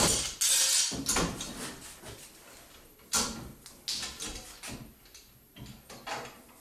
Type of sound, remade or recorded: recorded